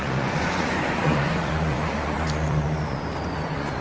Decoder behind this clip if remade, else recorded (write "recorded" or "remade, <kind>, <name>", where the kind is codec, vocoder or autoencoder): remade, vocoder, Vocos